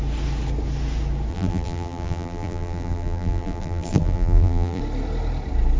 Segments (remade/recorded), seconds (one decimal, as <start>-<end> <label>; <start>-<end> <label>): 0.0-1.3 recorded; 1.3-4.8 remade; 4.8-5.8 recorded

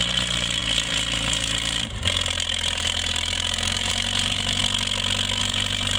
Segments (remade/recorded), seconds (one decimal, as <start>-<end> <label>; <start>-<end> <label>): 0.0-4.6 remade; 4.6-5.4 recorded; 5.4-6.0 remade

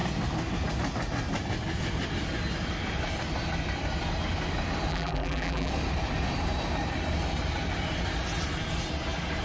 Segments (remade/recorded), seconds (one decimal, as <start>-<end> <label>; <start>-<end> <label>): 0.0-4.9 recorded; 4.9-5.7 remade; 5.7-9.4 recorded

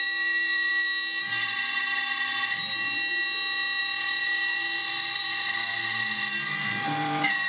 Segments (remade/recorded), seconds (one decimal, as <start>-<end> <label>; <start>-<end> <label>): 0.0-0.7 remade; 0.7-3.8 recorded; 3.8-7.5 remade

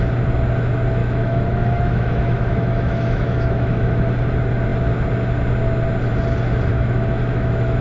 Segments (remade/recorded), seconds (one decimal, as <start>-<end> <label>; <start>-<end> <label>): 0.0-1.0 recorded; 1.0-4.1 remade; 4.1-6.7 recorded; 6.7-7.8 remade

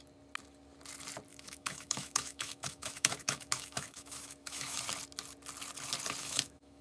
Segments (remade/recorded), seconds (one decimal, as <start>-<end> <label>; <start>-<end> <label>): 0.0-1.3 recorded; 1.3-4.8 remade; 4.8-6.2 recorded; 6.2-6.8 remade

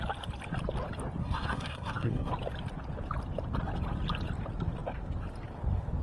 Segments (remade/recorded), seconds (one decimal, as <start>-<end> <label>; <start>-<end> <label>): 0.0-1.2 recorded; 1.2-2.3 remade; 2.3-6.0 recorded